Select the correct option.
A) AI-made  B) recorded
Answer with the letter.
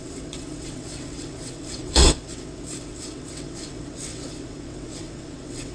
A